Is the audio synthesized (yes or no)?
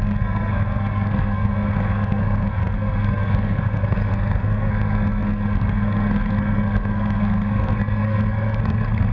yes